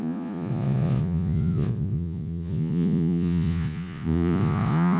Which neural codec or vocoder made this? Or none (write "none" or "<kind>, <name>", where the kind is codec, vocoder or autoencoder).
vocoder, Vocos